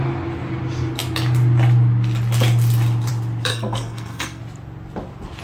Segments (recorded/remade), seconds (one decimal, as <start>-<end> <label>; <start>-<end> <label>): 0.0-3.5 recorded; 3.5-4.4 remade; 4.4-5.4 recorded